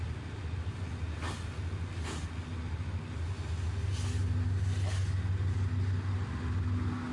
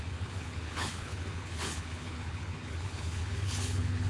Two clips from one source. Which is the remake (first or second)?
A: second